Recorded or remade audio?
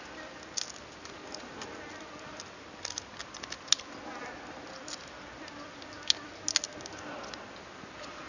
recorded